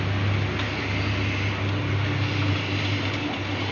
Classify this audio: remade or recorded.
recorded